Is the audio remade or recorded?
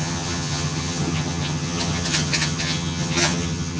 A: remade